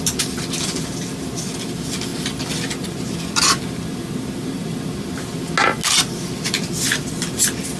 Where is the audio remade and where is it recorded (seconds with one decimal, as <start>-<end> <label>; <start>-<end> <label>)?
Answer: 0.0-7.8 recorded